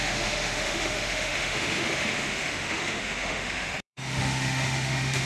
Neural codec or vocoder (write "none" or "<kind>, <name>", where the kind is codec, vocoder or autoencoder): autoencoder, DAC-VAE